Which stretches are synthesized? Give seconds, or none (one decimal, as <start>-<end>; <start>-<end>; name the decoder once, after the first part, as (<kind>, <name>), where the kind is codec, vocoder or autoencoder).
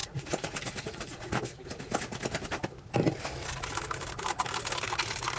0.0-1.4 (vocoder, Vocos)